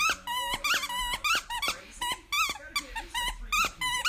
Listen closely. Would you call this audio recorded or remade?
recorded